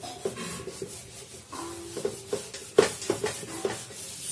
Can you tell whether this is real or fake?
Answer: real